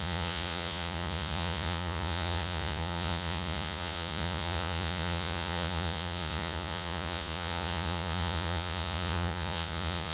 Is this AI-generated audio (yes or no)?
yes